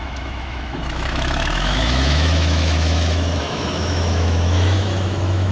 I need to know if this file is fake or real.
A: fake